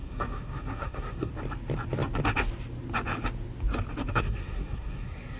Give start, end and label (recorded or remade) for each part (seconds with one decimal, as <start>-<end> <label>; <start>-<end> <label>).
0.0-1.3 remade; 1.3-4.1 recorded; 4.1-5.4 remade

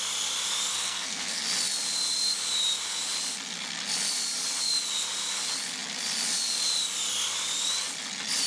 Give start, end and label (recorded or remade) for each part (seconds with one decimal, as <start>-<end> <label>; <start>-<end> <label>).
0.0-0.7 recorded; 0.7-1.4 remade; 1.4-8.5 recorded

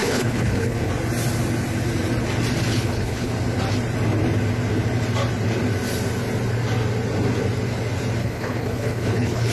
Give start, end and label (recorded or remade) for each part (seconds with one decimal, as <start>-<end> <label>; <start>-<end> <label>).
0.0-0.9 remade; 0.9-2.7 recorded; 2.7-3.3 remade; 3.3-8.2 recorded; 8.2-9.5 remade

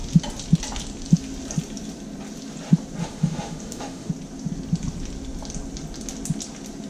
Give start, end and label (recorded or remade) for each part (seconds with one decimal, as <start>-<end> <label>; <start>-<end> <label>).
0.0-3.0 recorded; 3.0-4.1 remade; 4.1-6.9 recorded

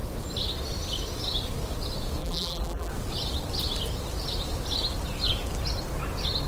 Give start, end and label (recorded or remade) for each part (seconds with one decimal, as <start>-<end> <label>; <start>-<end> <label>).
0.0-2.2 recorded; 2.2-2.9 remade; 2.9-6.5 recorded